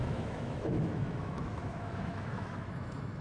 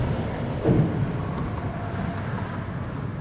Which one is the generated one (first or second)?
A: first